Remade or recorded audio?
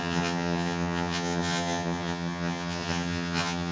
remade